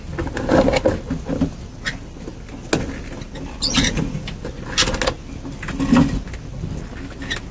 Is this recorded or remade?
recorded